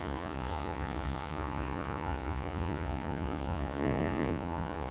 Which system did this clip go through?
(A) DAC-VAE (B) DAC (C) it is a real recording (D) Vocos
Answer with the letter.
D